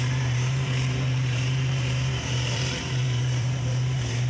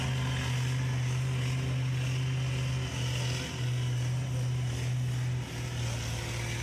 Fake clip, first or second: first